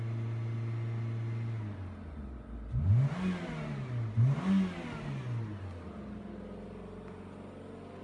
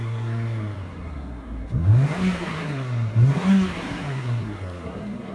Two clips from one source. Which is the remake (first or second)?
second